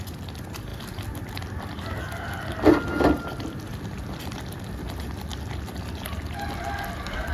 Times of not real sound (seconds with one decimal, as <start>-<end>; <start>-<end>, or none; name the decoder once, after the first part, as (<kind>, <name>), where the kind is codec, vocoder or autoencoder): none